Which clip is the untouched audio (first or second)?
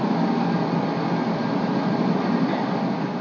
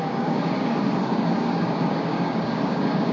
first